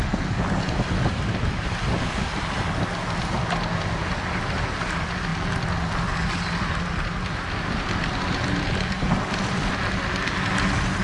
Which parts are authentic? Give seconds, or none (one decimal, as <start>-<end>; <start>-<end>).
0.0-11.0